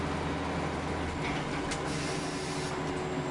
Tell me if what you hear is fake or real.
real